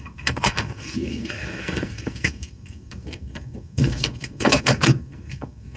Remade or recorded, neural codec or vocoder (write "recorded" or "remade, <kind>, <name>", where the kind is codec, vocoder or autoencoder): remade, codec, SNAC